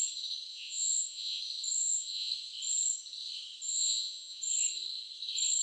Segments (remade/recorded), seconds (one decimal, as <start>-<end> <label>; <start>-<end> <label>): 0.0-0.5 recorded; 0.5-1.4 remade; 1.4-1.8 recorded; 1.8-2.3 remade; 2.3-3.7 recorded; 3.7-4.4 remade; 4.4-5.6 recorded